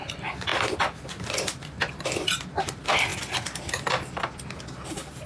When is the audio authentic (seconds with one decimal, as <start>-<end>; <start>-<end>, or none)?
0.0-5.3